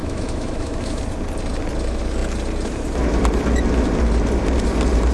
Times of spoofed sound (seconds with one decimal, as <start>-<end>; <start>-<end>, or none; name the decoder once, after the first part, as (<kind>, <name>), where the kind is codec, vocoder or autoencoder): 0.0-1.0 (autoencoder, DAC-VAE)